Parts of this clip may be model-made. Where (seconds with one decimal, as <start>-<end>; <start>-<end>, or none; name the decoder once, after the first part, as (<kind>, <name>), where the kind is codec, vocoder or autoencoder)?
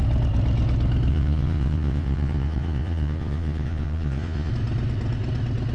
1.1-4.5 (vocoder, Vocos)